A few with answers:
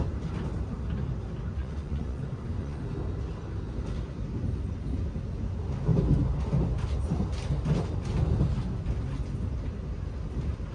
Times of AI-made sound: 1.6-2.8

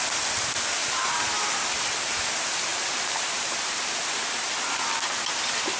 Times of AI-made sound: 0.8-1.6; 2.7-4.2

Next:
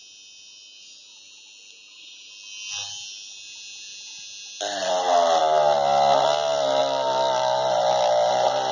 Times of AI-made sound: none